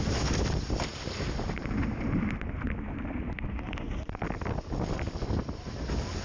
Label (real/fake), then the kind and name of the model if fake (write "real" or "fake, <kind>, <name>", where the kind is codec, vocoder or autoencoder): real